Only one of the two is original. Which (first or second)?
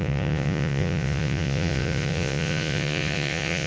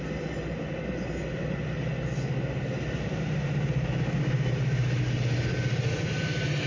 second